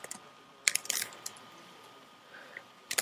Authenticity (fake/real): fake